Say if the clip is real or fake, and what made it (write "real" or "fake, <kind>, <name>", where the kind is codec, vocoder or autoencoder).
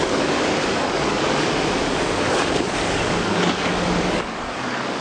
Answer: fake, codec, DAC